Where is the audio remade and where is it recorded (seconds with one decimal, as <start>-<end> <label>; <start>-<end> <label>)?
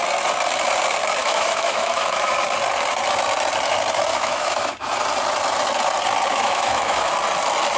0.0-1.2 recorded; 1.2-2.3 remade; 2.3-4.1 recorded; 4.1-4.9 remade; 4.9-6.3 recorded; 6.3-7.1 remade; 7.1-7.8 recorded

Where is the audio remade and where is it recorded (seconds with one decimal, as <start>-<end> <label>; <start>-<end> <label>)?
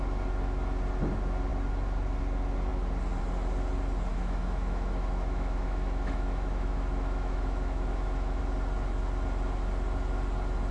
0.0-4.1 recorded; 4.1-8.4 remade; 8.4-10.7 recorded